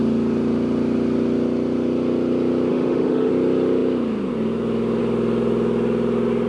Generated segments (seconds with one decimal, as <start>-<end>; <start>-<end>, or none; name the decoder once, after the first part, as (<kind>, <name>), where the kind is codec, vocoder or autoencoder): 2.7-3.3 (autoencoder, DAC-VAE)